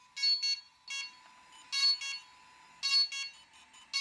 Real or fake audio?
real